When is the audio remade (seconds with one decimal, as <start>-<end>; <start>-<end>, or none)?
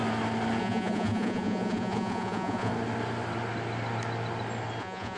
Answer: 0.6-2.7; 4.8-5.2